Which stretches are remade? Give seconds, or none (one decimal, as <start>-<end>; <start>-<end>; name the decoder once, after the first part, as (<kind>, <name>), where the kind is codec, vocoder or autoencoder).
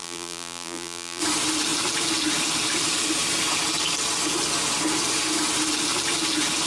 0.0-1.2 (vocoder, BigVGAN v2)